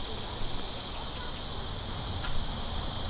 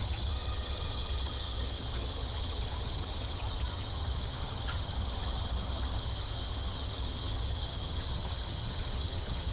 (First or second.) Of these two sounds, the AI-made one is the second